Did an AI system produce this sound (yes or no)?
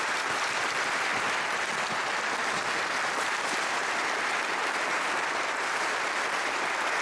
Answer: no